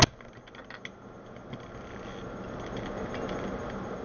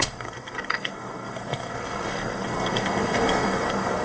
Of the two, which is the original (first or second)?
first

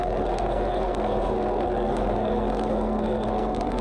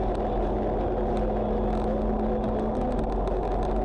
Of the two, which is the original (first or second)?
second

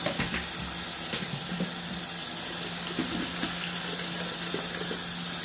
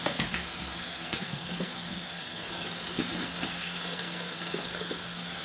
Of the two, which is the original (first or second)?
first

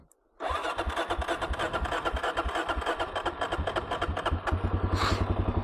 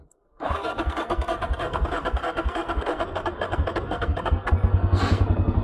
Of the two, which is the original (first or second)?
first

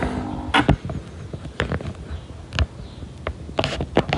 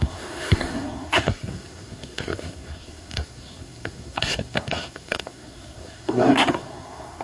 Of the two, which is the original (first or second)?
first